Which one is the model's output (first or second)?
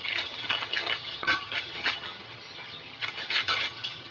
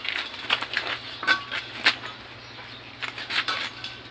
first